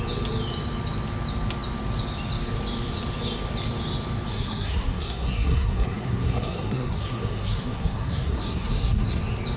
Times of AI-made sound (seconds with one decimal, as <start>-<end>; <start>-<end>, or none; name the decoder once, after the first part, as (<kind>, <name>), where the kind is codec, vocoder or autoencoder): 4.3-9.2 (codec, SNAC)